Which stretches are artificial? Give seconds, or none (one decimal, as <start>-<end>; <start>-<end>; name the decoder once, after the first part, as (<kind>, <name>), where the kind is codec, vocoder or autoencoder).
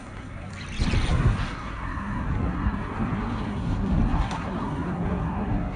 0.0-0.5 (codec, SNAC); 1.1-5.8